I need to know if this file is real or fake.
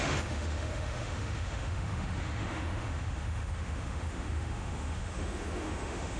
fake